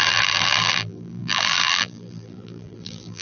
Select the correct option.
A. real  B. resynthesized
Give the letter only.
B